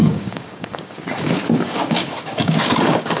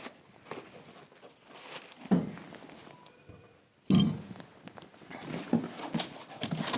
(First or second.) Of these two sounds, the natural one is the second